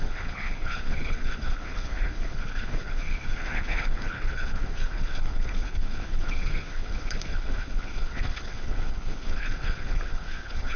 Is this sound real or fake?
fake